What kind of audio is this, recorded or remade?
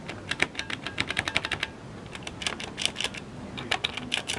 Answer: recorded